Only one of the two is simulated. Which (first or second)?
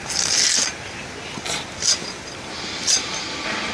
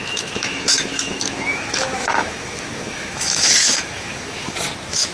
second